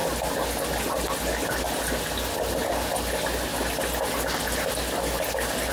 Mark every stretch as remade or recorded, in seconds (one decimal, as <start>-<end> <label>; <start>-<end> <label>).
0.0-5.7 recorded